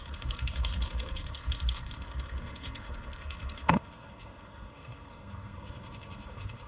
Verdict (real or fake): fake